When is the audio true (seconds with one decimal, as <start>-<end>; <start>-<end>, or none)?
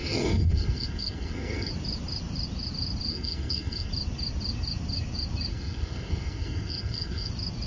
1.7-3.1; 3.9-5.5; 7.3-7.7